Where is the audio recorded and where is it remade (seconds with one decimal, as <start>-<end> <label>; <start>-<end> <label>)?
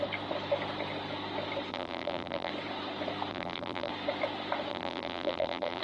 0.0-1.7 recorded; 1.7-2.5 remade; 2.5-3.3 recorded; 3.3-3.9 remade; 3.9-4.7 recorded; 4.7-5.8 remade